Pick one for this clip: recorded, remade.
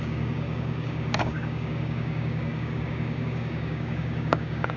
remade